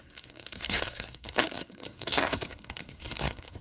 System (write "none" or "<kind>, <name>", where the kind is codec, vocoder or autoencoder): codec, SNAC